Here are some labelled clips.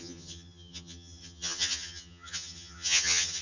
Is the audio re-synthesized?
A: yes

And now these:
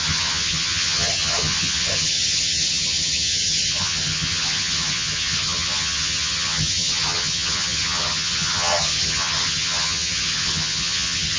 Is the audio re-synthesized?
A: yes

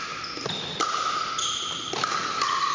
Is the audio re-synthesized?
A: no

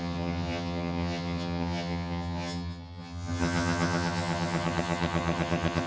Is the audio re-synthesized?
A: yes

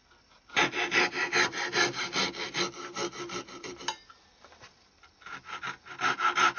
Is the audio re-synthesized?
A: no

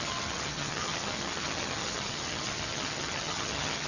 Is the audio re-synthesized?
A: yes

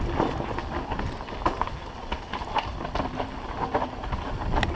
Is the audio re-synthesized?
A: no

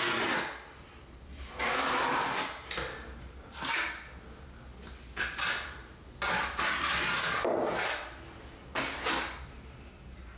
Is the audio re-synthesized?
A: no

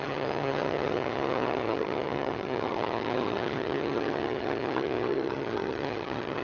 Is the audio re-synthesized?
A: yes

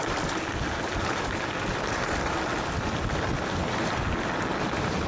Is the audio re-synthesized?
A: no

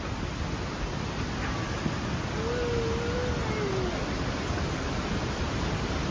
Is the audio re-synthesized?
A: no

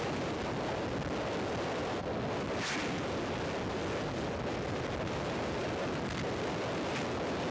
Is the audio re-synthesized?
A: no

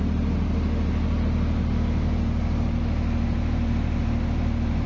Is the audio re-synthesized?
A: no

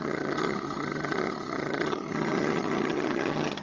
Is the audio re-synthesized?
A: yes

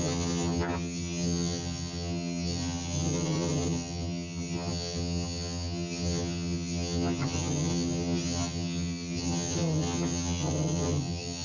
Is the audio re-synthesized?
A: yes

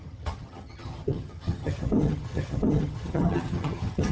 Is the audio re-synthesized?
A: yes